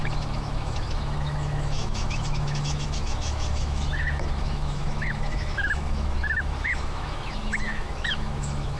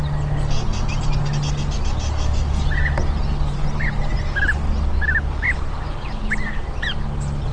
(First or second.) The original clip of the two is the second